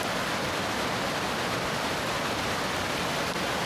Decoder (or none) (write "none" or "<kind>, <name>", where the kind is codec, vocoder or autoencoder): none